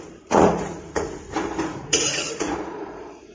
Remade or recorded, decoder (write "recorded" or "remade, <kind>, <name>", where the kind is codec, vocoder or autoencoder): remade, vocoder, Vocos